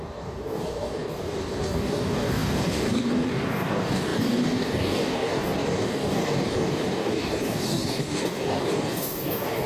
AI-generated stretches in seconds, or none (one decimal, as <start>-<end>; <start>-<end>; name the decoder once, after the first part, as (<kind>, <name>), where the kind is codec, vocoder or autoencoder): 0.0-9.7 (codec, DAC)